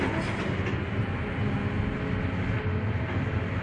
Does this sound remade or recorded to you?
recorded